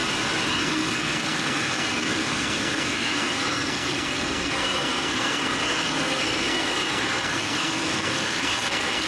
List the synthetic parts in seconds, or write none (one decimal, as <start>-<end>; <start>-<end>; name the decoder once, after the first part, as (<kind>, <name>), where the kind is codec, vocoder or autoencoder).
0.5-9.1 (codec, SNAC)